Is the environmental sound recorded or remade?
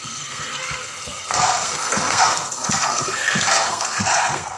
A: remade